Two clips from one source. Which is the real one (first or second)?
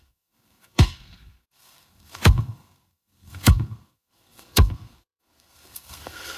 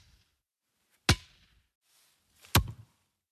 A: second